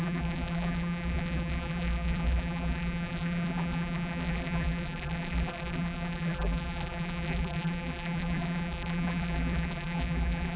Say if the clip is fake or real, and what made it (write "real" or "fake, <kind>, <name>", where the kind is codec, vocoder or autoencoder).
fake, vocoder, BigVGAN v2